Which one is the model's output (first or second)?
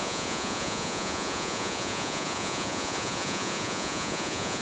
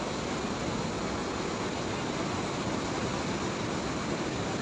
first